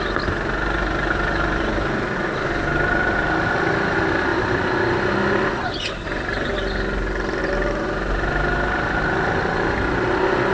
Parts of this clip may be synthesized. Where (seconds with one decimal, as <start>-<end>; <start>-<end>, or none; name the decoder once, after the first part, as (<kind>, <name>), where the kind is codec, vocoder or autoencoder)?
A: none

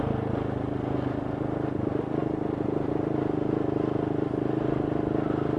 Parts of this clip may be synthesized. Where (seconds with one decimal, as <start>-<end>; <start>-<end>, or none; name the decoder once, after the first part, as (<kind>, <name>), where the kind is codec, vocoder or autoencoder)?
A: none

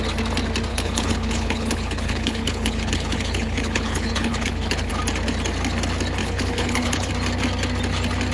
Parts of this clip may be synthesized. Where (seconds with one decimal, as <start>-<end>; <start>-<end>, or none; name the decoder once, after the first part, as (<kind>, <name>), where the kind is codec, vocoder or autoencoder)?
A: 0.7-4.9 (codec, HILCodec); 6.2-7.1

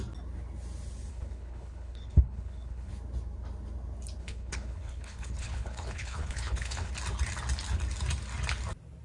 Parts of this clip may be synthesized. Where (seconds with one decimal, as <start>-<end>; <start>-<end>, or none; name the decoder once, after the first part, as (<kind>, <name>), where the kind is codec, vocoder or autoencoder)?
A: 1.1-2.9 (codec, HILCodec); 4.2-6.9

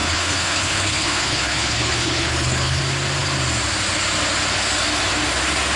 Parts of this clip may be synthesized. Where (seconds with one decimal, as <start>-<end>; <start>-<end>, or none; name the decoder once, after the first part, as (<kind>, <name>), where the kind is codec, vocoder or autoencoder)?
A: 0.0-2.8 (codec, HILCodec)

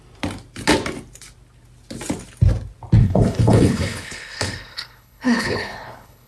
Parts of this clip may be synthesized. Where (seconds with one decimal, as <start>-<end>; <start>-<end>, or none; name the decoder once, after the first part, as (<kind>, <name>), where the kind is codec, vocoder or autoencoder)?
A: 3.0-6.3 (codec, HILCodec)

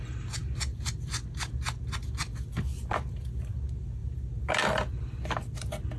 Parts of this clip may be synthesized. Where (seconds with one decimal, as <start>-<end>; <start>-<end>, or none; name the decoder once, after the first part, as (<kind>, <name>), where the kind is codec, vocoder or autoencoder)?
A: none

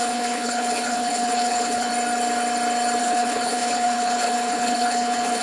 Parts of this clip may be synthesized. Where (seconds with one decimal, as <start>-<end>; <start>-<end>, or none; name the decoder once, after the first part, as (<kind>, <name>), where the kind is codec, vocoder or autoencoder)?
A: 0.0-1.9 (codec, HILCodec); 3.0-5.4